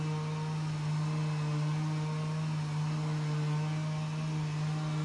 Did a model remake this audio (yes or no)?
no